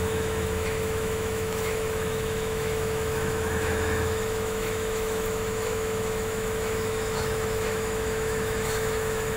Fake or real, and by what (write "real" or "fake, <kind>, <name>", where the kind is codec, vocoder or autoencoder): fake, autoencoder, DAC-VAE